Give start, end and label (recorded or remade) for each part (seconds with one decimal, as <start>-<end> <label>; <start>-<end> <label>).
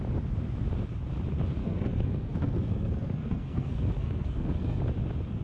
0.0-1.6 recorded; 1.6-4.8 remade; 4.8-5.4 recorded